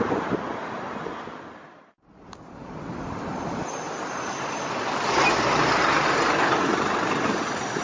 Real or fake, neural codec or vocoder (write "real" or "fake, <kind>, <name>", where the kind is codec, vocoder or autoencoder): real